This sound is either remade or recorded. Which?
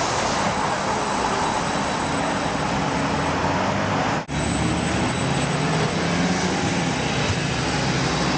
recorded